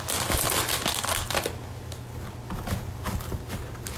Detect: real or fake real